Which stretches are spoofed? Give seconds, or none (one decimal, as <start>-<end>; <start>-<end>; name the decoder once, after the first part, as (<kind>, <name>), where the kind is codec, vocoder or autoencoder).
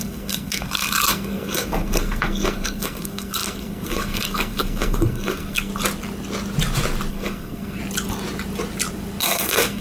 0.0-5.7 (codec, SNAC); 7.1-7.8; 9.2-9.8